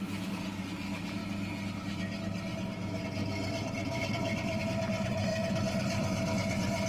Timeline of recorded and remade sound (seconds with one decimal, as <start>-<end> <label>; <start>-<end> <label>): 0.0-3.2 recorded; 3.2-4.6 remade; 4.6-5.3 recorded; 5.3-6.9 remade